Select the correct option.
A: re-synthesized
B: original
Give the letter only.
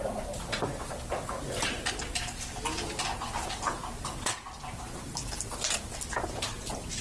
B